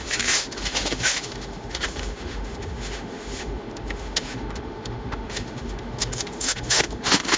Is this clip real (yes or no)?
no